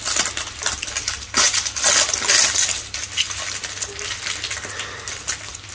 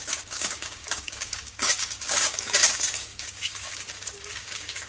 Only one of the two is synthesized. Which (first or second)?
second